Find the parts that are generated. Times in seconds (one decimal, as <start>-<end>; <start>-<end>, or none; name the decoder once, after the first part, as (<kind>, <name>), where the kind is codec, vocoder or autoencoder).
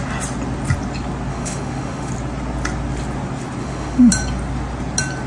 1.3-2.1 (autoencoder, DAC-VAE); 3.6-4.1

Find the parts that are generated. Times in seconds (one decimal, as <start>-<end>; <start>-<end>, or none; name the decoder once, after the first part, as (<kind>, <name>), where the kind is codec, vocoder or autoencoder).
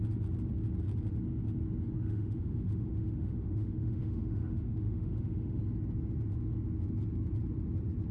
2.0-5.6 (autoencoder, DAC-VAE)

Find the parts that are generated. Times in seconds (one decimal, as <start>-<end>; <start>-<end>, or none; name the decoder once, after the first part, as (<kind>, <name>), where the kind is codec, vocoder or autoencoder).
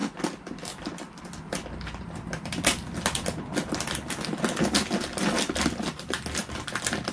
none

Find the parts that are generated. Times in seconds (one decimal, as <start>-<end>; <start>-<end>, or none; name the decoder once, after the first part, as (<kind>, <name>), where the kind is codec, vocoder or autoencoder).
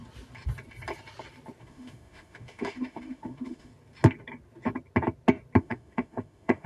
1.6-3.7 (autoencoder, DAC-VAE); 5.6-6.7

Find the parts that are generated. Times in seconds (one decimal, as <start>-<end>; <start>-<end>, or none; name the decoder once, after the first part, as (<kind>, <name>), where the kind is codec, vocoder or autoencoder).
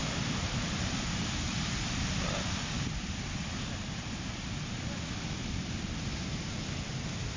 none